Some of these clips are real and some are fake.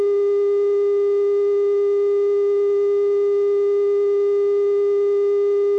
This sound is real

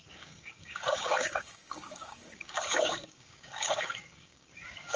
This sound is fake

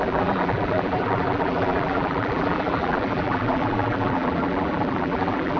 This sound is fake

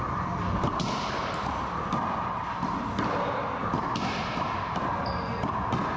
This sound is real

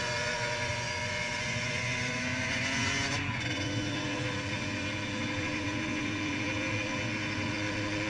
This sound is fake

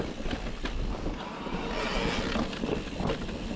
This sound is real